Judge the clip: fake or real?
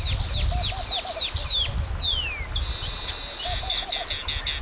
real